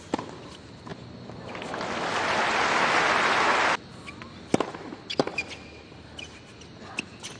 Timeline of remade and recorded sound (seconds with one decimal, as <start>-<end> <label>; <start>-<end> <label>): 0.0-7.4 recorded